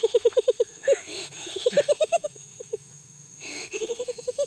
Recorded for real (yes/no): no